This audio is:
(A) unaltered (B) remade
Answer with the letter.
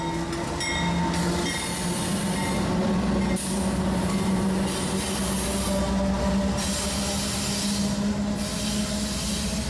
A